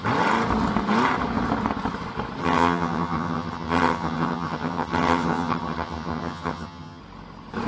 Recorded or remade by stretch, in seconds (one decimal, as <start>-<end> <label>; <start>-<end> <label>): 0.0-2.4 recorded; 2.4-7.0 remade; 7.0-7.7 recorded